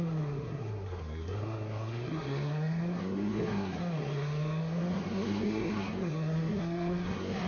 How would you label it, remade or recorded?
remade